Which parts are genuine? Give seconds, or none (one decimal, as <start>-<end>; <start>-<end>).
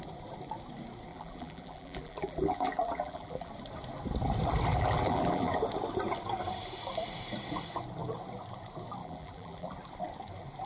0.0-1.1; 3.5-4.7; 5.6-9.0; 9.7-10.7